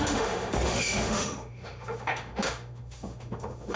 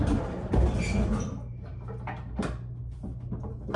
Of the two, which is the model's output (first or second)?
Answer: first